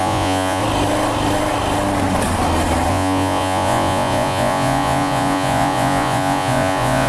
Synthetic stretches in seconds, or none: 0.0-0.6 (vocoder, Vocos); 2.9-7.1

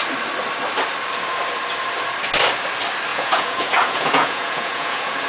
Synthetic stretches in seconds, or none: 3.1-5.3 (vocoder, Vocos)

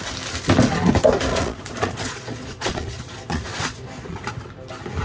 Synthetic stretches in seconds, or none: 1.3-4.3 (vocoder, Vocos)

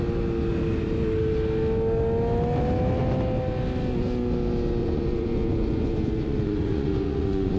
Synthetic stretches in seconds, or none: 4.8-7.6 (vocoder, Vocos)

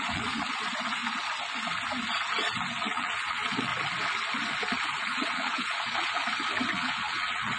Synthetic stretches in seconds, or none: 0.0-1.0 (vocoder, Vocos); 2.7-3.7; 5.0-6.2; 6.7-7.6